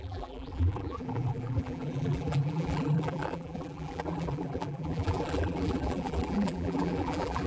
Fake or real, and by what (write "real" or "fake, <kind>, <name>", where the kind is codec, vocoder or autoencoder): fake, vocoder, BigVGAN v2